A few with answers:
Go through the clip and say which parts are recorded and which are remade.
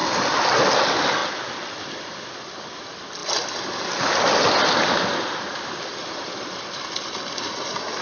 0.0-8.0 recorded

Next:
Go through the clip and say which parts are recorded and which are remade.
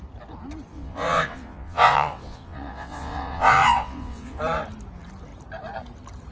0.0-0.7 recorded; 0.7-4.4 remade; 4.4-6.3 recorded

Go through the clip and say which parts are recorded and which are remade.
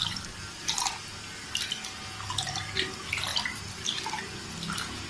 0.0-0.9 remade; 0.9-3.3 recorded; 3.3-4.2 remade; 4.2-5.1 recorded